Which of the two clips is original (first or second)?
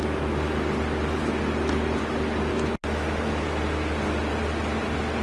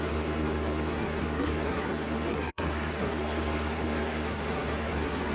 first